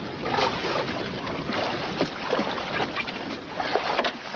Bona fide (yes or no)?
yes